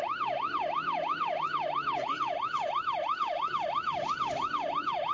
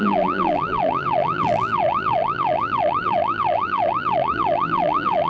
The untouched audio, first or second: first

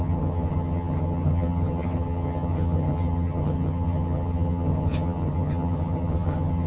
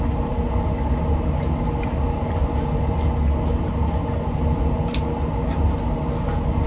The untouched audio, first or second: second